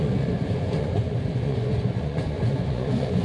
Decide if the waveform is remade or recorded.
remade